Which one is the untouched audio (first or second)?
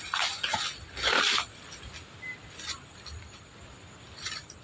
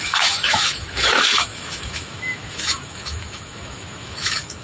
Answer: first